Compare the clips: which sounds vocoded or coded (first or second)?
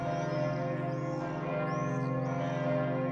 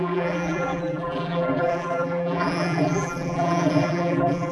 second